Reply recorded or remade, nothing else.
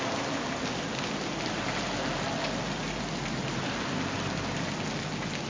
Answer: recorded